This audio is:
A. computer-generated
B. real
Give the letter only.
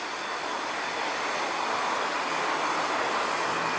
B